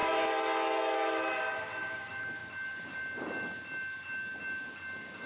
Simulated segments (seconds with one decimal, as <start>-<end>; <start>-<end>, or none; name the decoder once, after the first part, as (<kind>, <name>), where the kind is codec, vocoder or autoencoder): none